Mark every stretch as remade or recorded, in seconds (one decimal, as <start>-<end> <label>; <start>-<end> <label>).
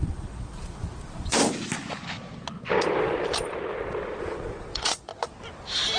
0.0-1.4 remade; 1.4-4.2 recorded; 4.2-5.1 remade; 5.1-6.0 recorded